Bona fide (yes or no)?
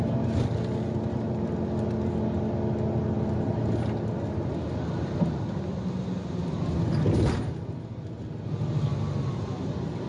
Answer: yes